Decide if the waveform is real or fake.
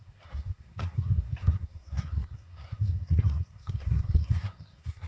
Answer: fake